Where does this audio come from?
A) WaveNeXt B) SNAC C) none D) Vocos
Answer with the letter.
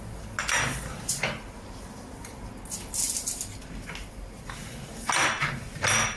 C